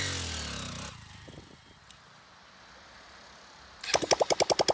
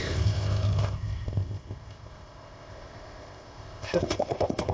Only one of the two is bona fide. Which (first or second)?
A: first